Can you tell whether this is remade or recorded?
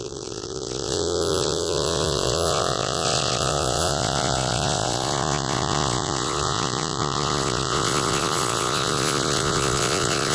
remade